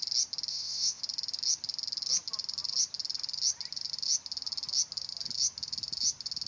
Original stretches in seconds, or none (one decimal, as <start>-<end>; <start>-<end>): 0.0-0.5; 1.0-6.5